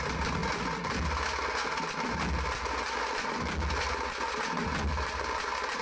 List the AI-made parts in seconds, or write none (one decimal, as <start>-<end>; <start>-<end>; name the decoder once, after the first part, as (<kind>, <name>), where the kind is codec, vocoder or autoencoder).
none